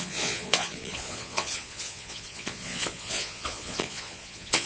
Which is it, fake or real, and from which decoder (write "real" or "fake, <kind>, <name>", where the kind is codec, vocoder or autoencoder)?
fake, vocoder, Vocos